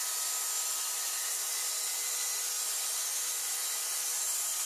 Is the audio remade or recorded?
recorded